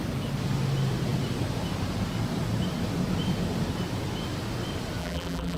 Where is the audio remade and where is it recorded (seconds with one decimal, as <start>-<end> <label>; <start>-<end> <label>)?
0.0-5.0 recorded; 5.0-5.6 remade